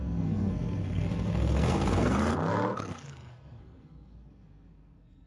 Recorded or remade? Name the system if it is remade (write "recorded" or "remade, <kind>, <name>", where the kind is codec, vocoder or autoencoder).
remade, codec, SNAC